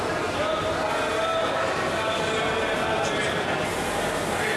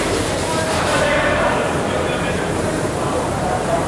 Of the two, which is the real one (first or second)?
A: first